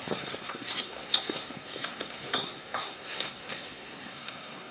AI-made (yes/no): yes